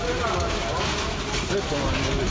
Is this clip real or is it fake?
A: real